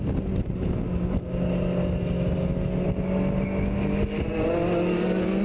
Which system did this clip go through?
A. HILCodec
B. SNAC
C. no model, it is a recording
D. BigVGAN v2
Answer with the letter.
C